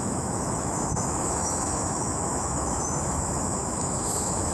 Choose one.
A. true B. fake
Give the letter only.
B